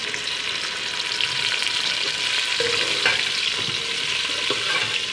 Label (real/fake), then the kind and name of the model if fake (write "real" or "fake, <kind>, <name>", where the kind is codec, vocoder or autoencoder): real